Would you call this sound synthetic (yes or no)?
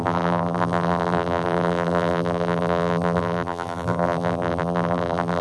yes